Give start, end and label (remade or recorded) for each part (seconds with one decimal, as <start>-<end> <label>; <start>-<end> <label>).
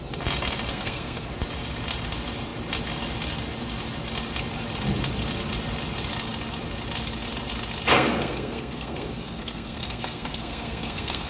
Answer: 0.0-0.7 recorded; 0.7-1.3 remade; 1.3-7.9 recorded; 7.9-11.3 remade